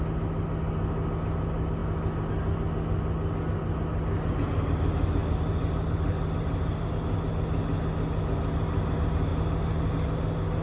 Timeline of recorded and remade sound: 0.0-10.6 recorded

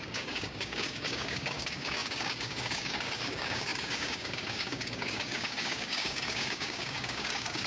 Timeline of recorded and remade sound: 0.0-7.7 remade

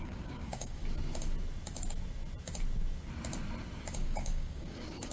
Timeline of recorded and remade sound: 0.0-0.8 remade; 0.8-3.9 recorded; 3.9-5.1 remade

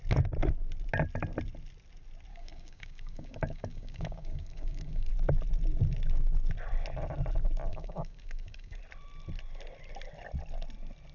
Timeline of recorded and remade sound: 0.0-2.3 recorded; 2.3-5.1 remade; 5.1-7.7 recorded; 7.7-8.8 remade; 8.8-11.1 recorded

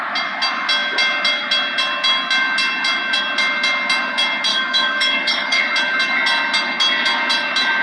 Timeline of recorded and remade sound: 0.0-4.5 recorded; 4.5-5.6 remade; 5.6-7.8 recorded

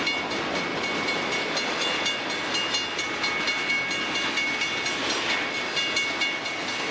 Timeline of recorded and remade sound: 0.0-6.9 recorded

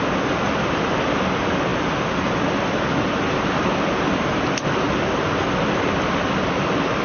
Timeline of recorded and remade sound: 0.0-7.0 recorded